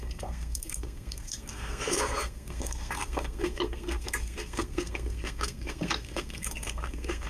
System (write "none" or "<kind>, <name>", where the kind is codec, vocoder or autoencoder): codec, SNAC